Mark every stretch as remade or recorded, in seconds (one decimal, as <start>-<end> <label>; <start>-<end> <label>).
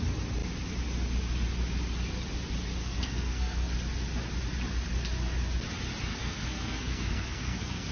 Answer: 0.0-2.8 recorded; 2.8-3.7 remade; 3.7-6.1 recorded; 6.1-7.9 remade